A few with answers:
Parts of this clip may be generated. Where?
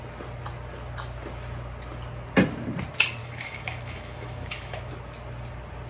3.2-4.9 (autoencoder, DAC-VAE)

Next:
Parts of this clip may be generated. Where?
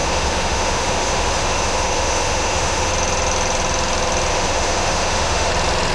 0.0-2.9 (autoencoder, DAC-VAE); 4.3-5.5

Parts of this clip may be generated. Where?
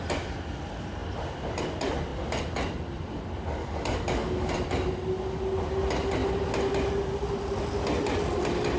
3.6-4.5 (codec, DAC)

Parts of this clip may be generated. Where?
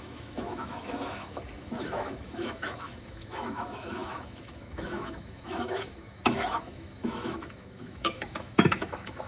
0.0-9.3 (autoencoder, DAC-VAE)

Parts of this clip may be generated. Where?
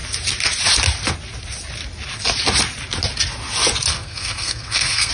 3.9-5.1 (codec, SNAC)